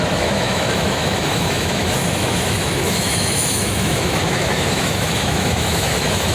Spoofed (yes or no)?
yes